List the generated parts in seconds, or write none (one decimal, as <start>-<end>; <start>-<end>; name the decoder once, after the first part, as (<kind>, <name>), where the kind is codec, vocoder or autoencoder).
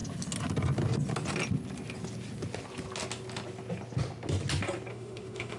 4.9-5.6 (autoencoder, DAC-VAE)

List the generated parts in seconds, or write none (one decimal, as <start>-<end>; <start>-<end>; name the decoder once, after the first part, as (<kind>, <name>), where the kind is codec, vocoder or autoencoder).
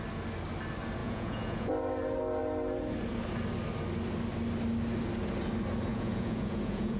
1.0-1.7 (vocoder, Vocos); 5.9-7.0